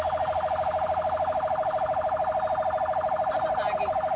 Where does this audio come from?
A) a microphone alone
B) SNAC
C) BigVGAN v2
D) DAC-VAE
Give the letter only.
A